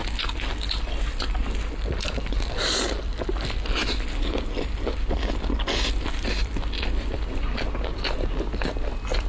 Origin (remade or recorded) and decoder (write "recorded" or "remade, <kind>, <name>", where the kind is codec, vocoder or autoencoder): recorded